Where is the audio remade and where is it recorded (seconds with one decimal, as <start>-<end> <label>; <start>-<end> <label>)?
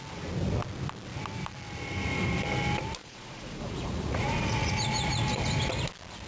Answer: 0.0-3.0 recorded; 3.0-5.3 remade; 5.3-6.3 recorded